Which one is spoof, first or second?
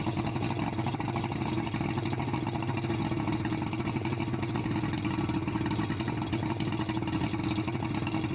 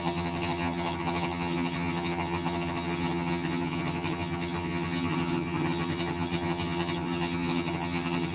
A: second